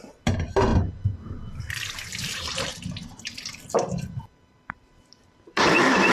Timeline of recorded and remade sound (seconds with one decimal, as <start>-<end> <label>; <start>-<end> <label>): 0.0-0.7 remade; 0.7-2.2 recorded; 2.2-2.7 remade; 2.7-4.5 recorded; 4.5-6.1 remade